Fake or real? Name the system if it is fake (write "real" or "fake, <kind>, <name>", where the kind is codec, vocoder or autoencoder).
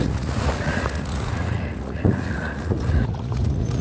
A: fake, vocoder, Vocos